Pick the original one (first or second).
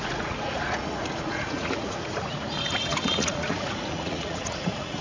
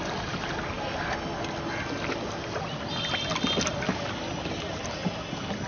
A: second